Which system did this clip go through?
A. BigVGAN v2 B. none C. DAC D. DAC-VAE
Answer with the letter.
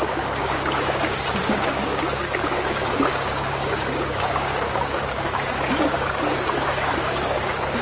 C